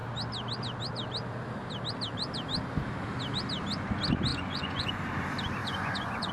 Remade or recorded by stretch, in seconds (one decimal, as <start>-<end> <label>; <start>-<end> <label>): 0.0-4.3 recorded; 4.3-5.0 remade; 5.0-5.6 recorded; 5.6-6.3 remade